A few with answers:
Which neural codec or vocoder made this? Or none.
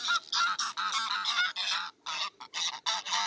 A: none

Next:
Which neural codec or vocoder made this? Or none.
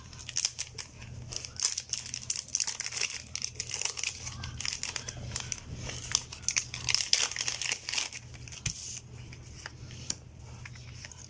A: none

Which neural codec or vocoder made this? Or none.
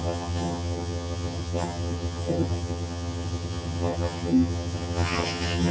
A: vocoder, HiFi-GAN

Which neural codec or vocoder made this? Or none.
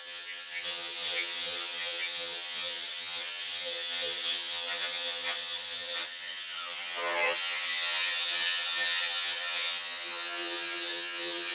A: vocoder, HiFi-GAN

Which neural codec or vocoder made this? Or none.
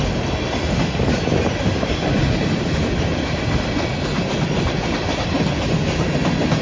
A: none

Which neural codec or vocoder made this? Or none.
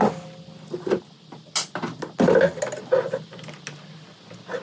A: none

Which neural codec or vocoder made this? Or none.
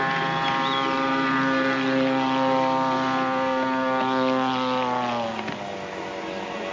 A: none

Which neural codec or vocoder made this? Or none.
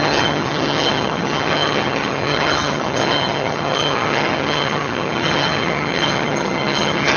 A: vocoder, HiFi-GAN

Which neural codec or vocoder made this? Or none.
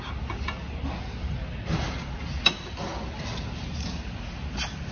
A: none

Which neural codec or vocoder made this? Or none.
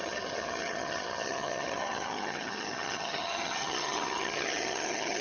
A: vocoder, HiFi-GAN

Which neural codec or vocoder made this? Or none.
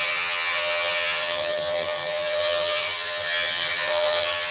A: vocoder, HiFi-GAN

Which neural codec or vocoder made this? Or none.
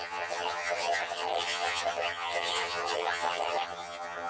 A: vocoder, HiFi-GAN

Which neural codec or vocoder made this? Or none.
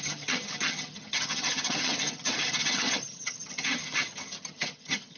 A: vocoder, HiFi-GAN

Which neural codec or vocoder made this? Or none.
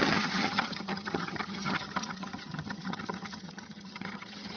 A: vocoder, HiFi-GAN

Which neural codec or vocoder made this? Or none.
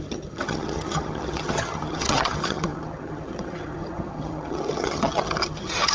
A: vocoder, HiFi-GAN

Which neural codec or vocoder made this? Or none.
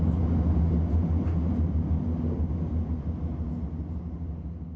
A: none